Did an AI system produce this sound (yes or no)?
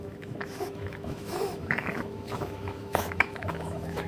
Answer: yes